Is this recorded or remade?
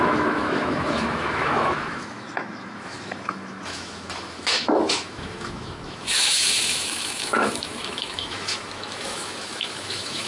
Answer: remade